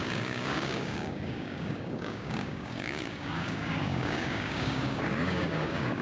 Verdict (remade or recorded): remade